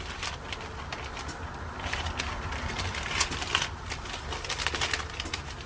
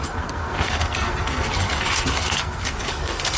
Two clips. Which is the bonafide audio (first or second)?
first